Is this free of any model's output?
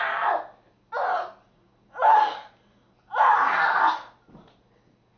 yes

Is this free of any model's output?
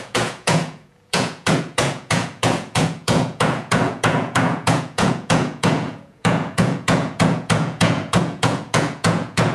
no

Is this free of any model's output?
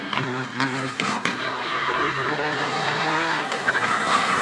no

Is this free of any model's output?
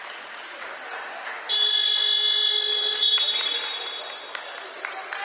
yes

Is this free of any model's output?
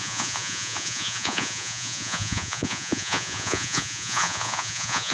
no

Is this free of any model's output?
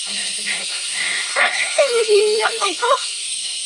no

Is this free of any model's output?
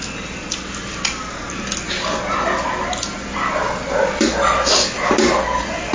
yes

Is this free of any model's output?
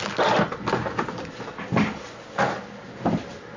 yes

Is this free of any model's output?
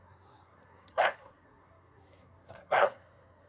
no